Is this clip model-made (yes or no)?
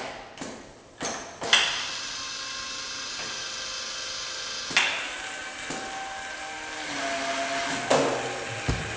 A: no